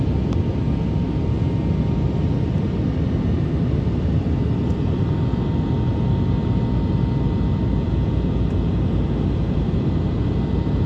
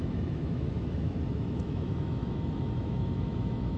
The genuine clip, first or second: first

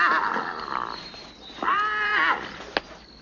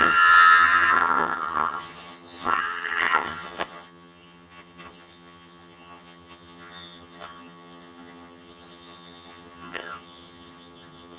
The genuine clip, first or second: first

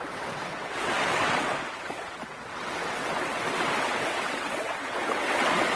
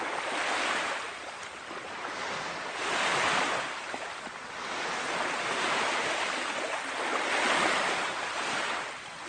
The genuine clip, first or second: second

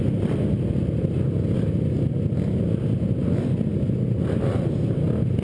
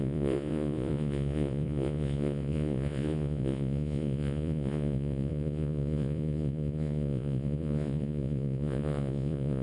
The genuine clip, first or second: first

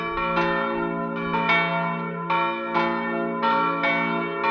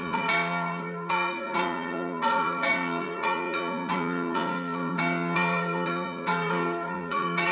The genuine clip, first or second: first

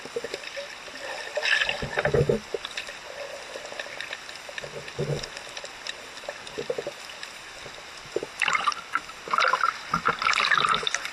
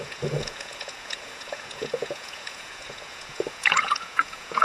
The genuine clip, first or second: first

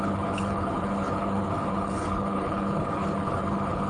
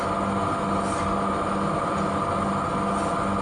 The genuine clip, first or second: second